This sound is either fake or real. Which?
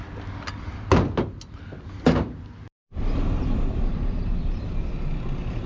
real